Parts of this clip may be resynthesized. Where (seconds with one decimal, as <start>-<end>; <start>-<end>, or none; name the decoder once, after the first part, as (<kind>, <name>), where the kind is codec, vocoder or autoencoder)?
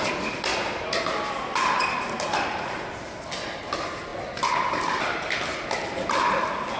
0.5-1.1 (vocoder, BigVGAN v2)